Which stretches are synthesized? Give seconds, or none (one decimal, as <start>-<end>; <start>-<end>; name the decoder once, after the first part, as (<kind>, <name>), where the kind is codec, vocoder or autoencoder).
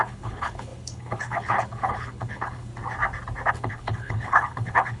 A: 0.0-2.7 (codec, HILCodec); 3.5-5.0